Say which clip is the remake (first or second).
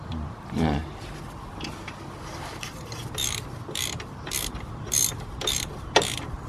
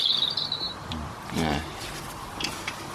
first